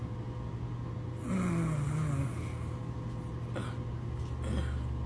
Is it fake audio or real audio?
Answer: real